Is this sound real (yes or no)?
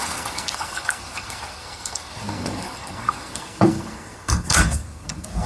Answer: no